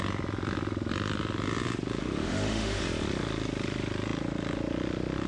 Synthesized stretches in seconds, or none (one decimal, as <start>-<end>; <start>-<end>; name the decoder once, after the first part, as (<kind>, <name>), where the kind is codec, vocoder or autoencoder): 2.0-2.8 (autoencoder, DAC-VAE)